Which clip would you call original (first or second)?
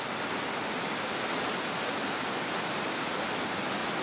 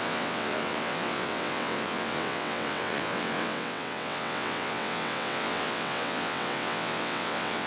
first